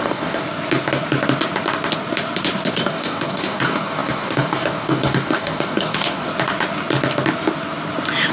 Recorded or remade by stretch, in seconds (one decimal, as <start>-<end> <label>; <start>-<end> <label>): 0.0-0.4 remade; 0.4-2.7 recorded; 2.7-6.3 remade; 6.3-8.3 recorded